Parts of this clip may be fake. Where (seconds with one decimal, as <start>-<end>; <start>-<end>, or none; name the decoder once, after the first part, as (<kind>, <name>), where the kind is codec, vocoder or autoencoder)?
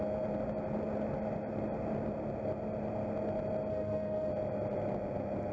3.7-4.3 (autoencoder, DAC-VAE)